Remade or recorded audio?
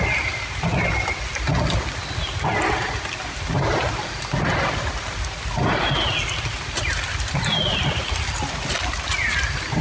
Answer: recorded